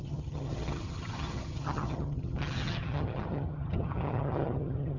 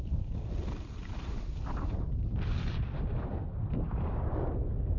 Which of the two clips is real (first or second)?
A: second